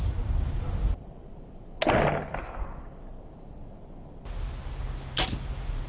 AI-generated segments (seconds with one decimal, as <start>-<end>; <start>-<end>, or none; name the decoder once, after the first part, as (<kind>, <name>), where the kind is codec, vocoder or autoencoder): 0.0-1.3 (vocoder, BigVGAN v2); 4.8-5.9